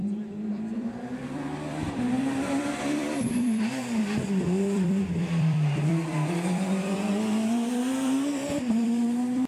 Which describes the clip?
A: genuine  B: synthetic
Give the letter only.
B